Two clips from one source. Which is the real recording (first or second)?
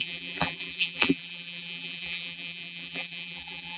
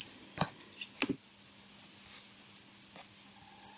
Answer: second